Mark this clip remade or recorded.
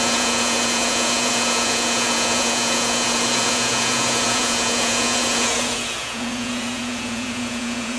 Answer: remade